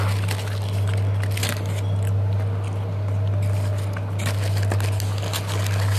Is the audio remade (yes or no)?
no